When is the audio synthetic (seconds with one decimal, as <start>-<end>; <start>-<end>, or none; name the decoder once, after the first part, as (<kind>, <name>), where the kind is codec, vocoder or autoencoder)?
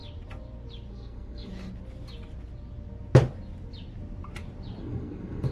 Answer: 0.9-1.5 (codec, SNAC); 4.8-5.5